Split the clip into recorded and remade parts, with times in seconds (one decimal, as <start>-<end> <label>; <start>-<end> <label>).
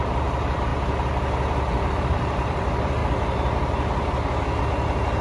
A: 0.0-0.7 remade; 0.7-1.9 recorded; 1.9-3.0 remade; 3.0-4.6 recorded; 4.6-5.2 remade